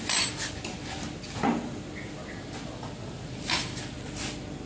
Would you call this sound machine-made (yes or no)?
no